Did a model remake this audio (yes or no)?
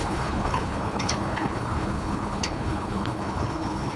yes